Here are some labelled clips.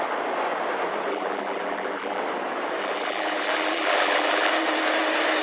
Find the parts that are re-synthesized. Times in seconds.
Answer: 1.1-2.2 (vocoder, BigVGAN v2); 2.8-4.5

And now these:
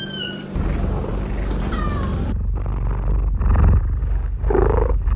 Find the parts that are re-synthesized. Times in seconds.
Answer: 4.0-5.2 (codec, DAC)

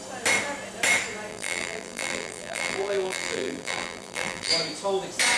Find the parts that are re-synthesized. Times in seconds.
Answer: 1.3-4.5 (vocoder, BigVGAN v2)

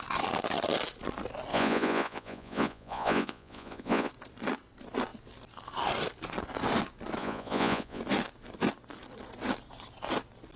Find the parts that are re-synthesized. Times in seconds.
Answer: 1.5-4.1 (vocoder, Vocos); 7.2-8.0